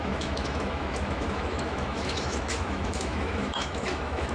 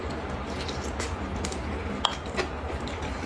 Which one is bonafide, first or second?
second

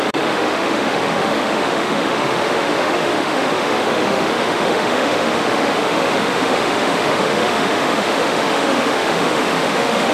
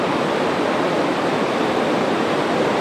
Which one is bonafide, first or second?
second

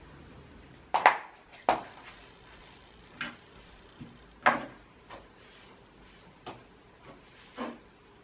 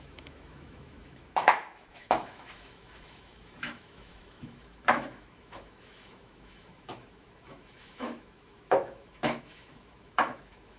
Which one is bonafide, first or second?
first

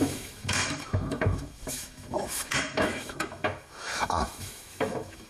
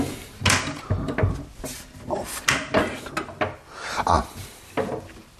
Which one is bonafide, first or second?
second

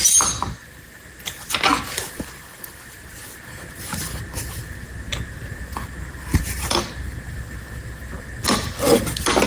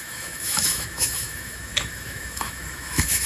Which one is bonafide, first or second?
first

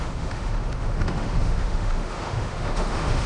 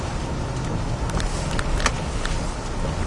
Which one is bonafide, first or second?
second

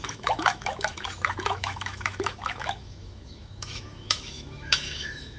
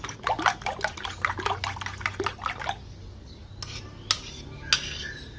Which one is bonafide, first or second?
second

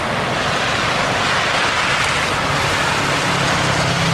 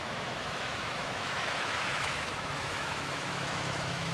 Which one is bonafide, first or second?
first